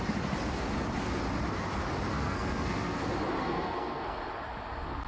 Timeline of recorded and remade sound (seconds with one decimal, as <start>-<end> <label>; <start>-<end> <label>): 0.0-2.1 recorded; 2.1-3.0 remade; 3.0-3.4 recorded; 3.4-4.2 remade; 4.2-5.1 recorded